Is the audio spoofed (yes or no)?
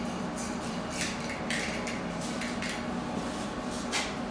no